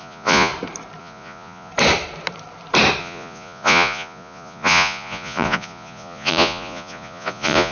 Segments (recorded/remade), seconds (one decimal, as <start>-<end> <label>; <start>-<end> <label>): 0.0-0.5 remade; 0.5-1.0 recorded; 1.0-1.7 remade; 1.7-3.0 recorded; 3.0-7.7 remade